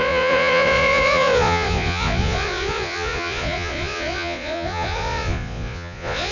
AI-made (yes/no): yes